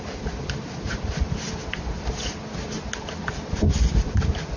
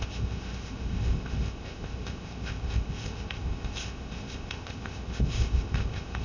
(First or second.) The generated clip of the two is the second